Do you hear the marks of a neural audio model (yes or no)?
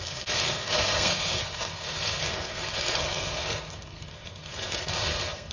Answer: yes